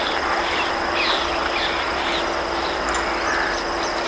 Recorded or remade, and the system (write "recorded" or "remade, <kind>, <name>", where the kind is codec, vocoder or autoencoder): recorded